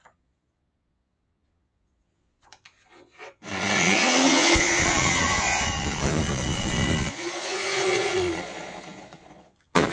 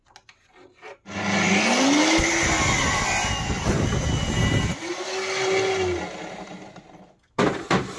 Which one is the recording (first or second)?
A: second